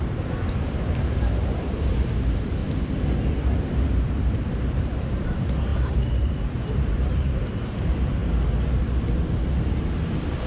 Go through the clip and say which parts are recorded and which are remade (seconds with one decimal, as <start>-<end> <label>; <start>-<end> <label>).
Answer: 0.0-2.6 remade; 2.6-3.3 recorded; 3.3-8.2 remade; 8.2-9.7 recorded; 9.7-10.5 remade